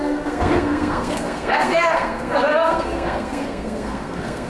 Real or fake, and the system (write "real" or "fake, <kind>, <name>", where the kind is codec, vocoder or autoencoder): fake, codec, SNAC